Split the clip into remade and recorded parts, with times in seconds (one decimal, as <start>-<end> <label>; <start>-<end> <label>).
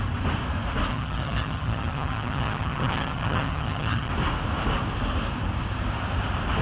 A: 0.0-0.9 recorded; 0.9-4.1 remade; 4.1-6.6 recorded